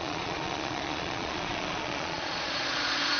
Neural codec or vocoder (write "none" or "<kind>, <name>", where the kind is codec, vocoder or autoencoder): vocoder, Vocos